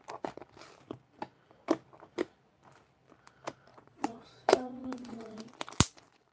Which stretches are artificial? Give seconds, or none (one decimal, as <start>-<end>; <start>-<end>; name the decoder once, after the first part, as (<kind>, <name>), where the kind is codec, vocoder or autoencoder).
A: 3.7-5.4 (vocoder, Vocos)